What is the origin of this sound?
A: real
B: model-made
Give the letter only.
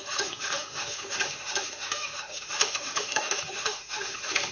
B